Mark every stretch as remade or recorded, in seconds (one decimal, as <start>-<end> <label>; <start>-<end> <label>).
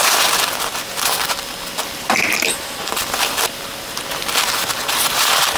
0.0-5.6 remade